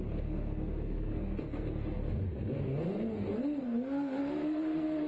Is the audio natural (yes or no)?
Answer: no